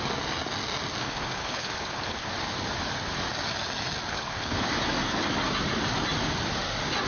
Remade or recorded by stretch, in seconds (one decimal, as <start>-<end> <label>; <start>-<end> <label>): 0.0-1.0 recorded; 1.0-2.3 remade; 2.3-4.1 recorded; 4.1-4.7 remade; 4.7-7.1 recorded